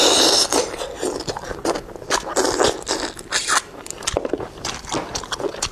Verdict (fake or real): real